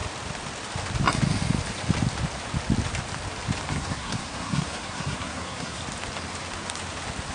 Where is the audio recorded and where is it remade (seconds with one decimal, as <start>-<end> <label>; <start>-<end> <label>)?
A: 0.0-3.7 recorded; 3.7-5.8 remade; 5.8-7.3 recorded